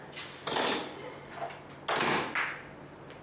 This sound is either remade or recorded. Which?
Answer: recorded